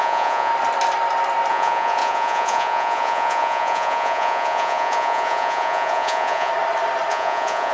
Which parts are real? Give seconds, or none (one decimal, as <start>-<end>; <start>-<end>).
0.5-1.5; 6.5-7.1